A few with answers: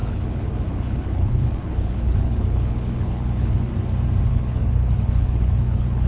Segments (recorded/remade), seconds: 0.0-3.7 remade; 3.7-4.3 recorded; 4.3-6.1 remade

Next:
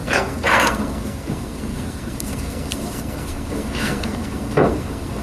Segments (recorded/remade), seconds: 0.0-5.2 remade